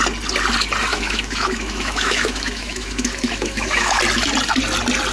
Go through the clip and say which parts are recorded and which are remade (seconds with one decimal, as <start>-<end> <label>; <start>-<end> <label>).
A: 0.0-0.9 recorded; 0.9-4.0 remade; 4.0-5.1 recorded